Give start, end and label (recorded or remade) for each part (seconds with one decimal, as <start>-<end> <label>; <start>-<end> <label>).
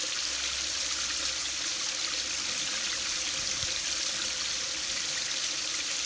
0.0-6.1 recorded